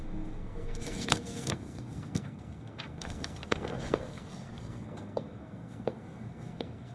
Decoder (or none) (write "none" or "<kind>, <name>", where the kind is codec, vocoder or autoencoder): codec, SNAC